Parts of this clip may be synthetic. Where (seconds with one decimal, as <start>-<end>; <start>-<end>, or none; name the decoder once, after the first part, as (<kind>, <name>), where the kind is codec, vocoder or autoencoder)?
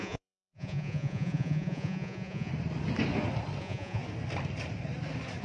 0.0-2.5 (vocoder, Vocos); 3.6-4.0